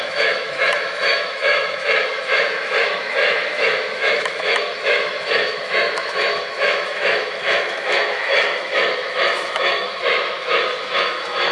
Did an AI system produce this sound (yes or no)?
yes